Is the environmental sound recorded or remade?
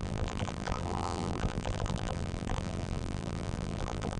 remade